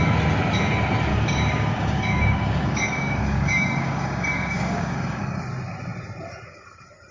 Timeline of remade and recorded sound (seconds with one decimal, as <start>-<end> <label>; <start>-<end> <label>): 0.0-1.1 recorded; 1.1-5.4 remade; 5.4-7.1 recorded